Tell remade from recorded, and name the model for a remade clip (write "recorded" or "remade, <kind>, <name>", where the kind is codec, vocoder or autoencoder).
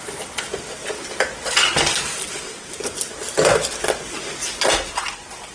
recorded